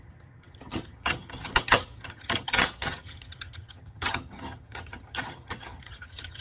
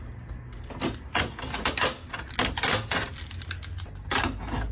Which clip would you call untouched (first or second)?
second